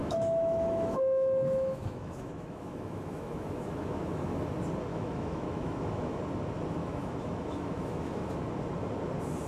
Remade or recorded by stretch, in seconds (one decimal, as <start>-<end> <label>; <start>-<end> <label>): 0.0-4.4 remade; 4.4-4.9 recorded; 4.9-6.2 remade; 6.2-6.8 recorded; 6.8-8.3 remade; 8.3-9.5 recorded